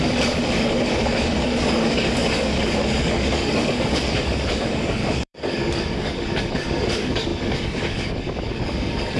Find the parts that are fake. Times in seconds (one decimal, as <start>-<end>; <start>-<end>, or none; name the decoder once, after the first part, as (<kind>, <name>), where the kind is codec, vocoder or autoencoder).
0.0-9.2 (codec, DAC)